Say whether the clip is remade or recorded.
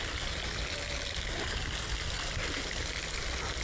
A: recorded